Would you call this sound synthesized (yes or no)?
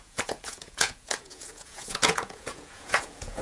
yes